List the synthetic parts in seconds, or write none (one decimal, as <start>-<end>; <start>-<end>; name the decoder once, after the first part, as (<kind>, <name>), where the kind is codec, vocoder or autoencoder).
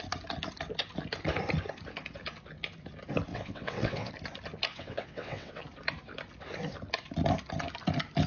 3.3-4.1 (vocoder, WaveNeXt); 4.7-5.6